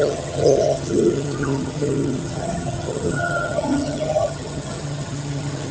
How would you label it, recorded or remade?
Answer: remade